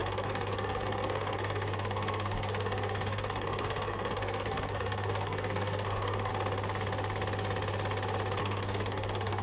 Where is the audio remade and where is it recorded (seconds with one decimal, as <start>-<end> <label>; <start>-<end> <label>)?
0.0-6.3 remade; 6.3-8.4 recorded; 8.4-9.4 remade